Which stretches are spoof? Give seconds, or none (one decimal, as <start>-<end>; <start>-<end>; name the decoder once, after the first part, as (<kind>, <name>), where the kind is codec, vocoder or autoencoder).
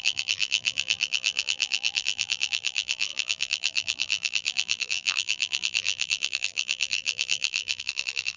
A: 0.0-8.4 (vocoder, BigVGAN v2)